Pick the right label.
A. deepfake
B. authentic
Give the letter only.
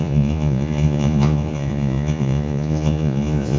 A